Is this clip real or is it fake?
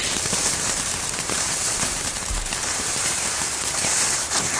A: fake